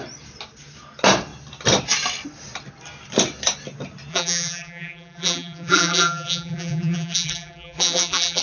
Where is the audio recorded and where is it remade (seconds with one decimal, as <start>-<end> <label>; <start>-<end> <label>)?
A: 0.0-4.1 recorded; 4.1-8.4 remade